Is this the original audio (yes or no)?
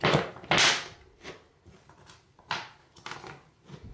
yes